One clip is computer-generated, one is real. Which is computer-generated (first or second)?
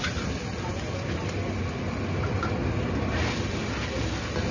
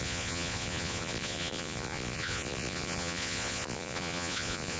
second